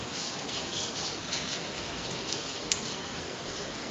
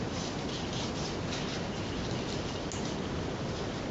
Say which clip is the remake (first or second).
first